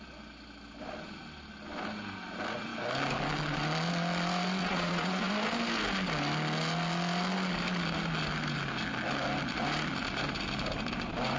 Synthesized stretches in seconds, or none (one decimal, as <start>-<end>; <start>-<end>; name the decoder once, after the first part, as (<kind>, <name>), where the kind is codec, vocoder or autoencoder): 4.6-5.3 (vocoder, Vocos)